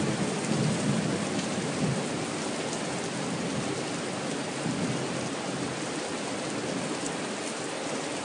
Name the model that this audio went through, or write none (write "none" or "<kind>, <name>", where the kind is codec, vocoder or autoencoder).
none